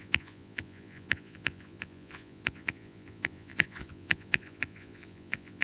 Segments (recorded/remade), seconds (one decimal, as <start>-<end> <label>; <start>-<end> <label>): 0.0-5.6 remade